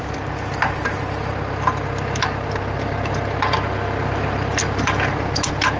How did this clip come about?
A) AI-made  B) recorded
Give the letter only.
B